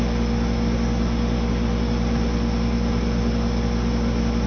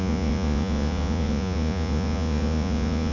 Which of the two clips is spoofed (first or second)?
second